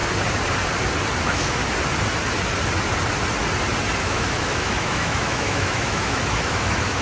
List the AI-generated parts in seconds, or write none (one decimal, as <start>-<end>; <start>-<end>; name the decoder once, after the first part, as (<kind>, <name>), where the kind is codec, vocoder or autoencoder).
1.2-1.6 (autoencoder, DAC-VAE); 4.0-7.0